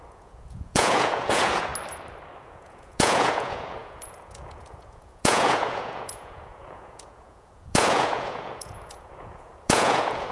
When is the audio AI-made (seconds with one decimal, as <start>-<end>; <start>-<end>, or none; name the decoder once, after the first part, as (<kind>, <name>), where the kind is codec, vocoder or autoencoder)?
0.0-1.7 (vocoder, Vocos); 2.4-10.3